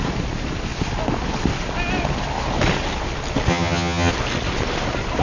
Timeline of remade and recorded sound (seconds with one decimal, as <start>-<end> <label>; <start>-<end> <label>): 0.0-3.5 recorded; 3.5-4.1 remade; 4.1-5.2 recorded